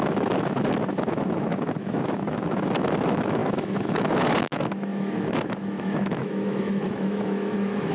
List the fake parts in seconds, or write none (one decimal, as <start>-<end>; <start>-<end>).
0.0-7.9